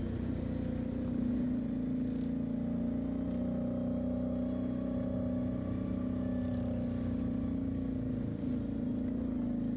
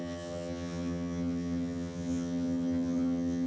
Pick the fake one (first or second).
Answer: second